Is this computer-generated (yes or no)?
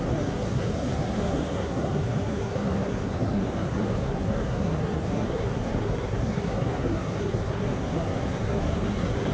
yes